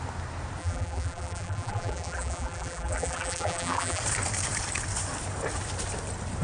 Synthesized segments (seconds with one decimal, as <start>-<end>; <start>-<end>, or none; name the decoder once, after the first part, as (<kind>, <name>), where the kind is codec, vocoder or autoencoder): 0.6-4.0 (vocoder, BigVGAN v2)